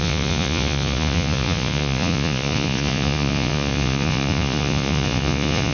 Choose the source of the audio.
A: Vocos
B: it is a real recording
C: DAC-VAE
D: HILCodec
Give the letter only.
A